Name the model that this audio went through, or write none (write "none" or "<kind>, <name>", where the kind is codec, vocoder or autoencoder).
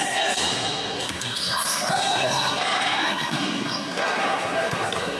codec, SNAC